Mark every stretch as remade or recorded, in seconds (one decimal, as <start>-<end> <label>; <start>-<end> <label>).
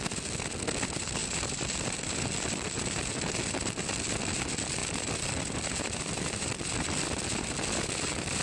0.0-1.2 recorded; 1.2-3.6 remade; 3.6-4.8 recorded; 4.8-8.4 remade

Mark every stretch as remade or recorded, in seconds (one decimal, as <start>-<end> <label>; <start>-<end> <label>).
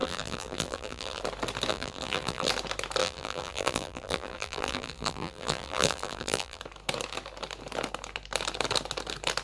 0.0-1.2 remade; 1.2-1.7 recorded; 1.7-2.5 remade; 2.5-3.0 recorded; 3.0-6.6 remade; 6.6-9.4 recorded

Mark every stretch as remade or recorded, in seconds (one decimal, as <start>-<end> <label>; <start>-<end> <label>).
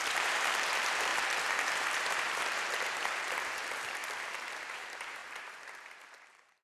0.0-1.1 remade; 1.1-2.0 recorded; 2.0-4.0 remade; 4.0-4.7 recorded; 4.7-6.6 remade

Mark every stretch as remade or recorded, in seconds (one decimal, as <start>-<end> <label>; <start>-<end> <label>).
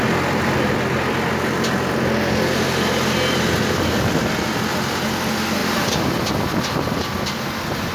0.0-5.6 recorded; 5.6-6.3 remade; 6.3-7.9 recorded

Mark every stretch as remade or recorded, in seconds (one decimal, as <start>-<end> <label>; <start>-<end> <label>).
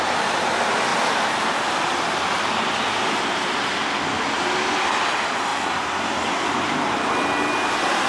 0.0-8.1 recorded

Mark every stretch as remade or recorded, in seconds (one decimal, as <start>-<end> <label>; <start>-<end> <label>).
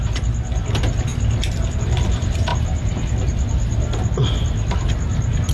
0.0-2.5 remade; 2.5-5.5 recorded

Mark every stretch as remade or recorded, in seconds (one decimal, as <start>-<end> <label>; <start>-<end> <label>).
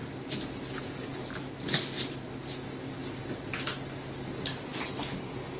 0.0-5.6 recorded